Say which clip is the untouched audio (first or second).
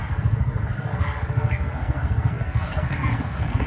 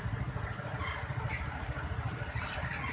second